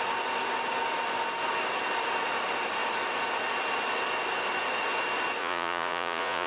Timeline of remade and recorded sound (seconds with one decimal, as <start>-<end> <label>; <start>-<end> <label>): 0.0-5.4 recorded; 5.4-6.5 remade